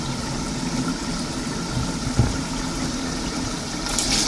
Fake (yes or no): no